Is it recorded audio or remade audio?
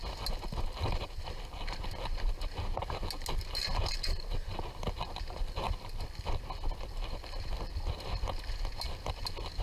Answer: recorded